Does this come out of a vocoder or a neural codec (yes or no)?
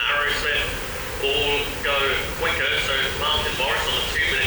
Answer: no